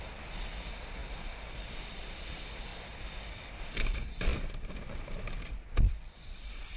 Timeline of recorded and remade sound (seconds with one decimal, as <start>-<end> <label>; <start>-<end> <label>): 0.0-6.8 remade